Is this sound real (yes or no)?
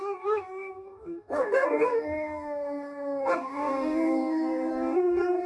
no